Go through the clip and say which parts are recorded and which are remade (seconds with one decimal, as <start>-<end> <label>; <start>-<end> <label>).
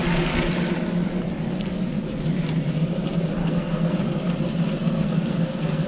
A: 0.0-3.4 recorded; 3.4-4.0 remade; 4.0-4.8 recorded; 4.8-5.9 remade